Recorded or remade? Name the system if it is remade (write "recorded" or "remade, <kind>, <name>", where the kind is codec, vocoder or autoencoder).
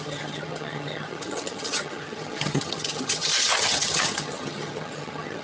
remade, vocoder, HiFi-GAN